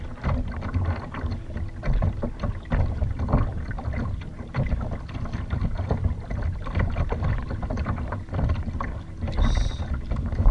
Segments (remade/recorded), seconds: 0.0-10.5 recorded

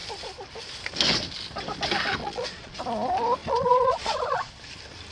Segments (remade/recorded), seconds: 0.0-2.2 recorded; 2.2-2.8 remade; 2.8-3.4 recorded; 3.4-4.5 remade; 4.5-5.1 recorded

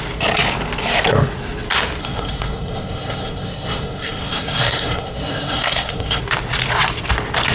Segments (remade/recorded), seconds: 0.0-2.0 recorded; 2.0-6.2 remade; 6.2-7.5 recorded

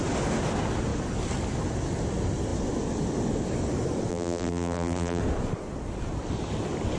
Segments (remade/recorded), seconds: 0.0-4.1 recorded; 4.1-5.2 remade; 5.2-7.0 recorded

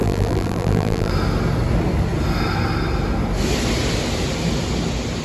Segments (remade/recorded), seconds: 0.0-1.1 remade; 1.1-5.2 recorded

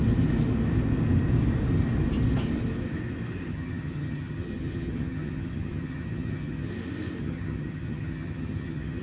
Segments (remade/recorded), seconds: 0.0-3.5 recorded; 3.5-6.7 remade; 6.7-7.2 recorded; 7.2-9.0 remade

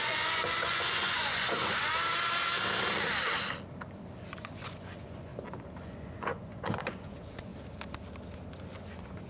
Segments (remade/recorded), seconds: 0.0-1.9 remade; 1.9-4.3 recorded; 4.3-5.3 remade; 5.3-5.8 recorded; 5.8-7.5 remade; 7.5-8.7 recorded; 8.7-9.3 remade